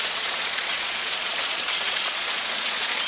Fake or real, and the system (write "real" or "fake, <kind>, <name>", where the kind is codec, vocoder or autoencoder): fake, vocoder, Vocos